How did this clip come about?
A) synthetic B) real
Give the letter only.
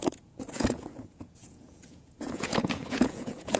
A